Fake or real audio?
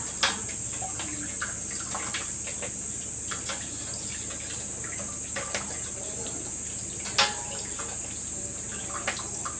real